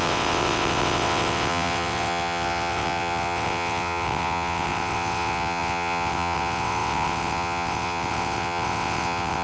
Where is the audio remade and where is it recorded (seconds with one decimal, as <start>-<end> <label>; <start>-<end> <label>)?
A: 0.0-9.4 remade